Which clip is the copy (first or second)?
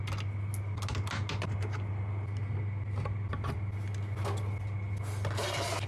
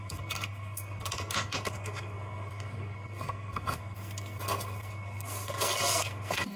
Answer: second